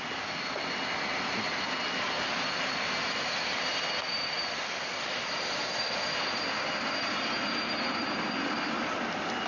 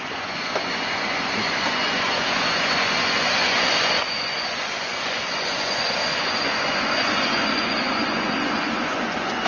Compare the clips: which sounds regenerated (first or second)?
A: second